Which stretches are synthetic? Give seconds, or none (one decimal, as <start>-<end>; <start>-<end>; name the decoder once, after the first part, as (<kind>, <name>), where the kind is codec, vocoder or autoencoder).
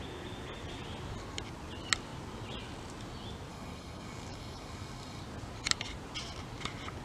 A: 3.5-5.2 (codec, DAC)